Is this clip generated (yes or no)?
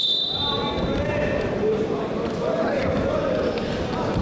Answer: no